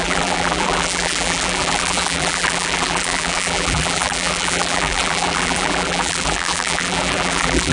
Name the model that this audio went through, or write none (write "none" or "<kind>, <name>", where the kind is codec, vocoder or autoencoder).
vocoder, BigVGAN v2